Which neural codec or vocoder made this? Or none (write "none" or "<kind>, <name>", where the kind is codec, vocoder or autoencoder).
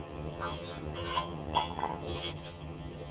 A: vocoder, HiFi-GAN